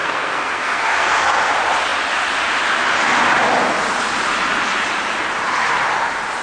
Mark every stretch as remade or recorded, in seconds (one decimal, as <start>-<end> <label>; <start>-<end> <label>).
0.0-1.5 remade; 1.5-6.4 recorded

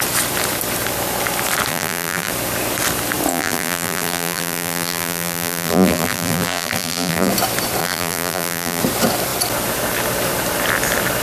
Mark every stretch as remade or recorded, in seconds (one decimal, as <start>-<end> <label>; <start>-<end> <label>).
0.0-1.7 recorded; 1.7-2.3 remade; 2.3-3.3 recorded; 3.3-7.3 remade; 7.3-7.8 recorded; 7.8-8.8 remade; 8.8-11.2 recorded

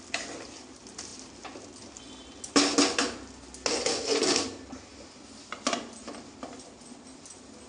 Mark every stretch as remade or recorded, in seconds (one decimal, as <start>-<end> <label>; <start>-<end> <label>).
0.0-7.7 recorded